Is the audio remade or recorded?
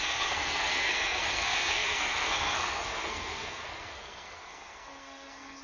remade